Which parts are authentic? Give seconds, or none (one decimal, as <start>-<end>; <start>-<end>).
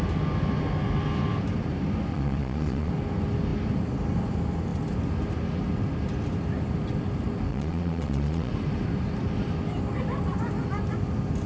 0.0-2.1; 2.9-7.5; 8.5-11.5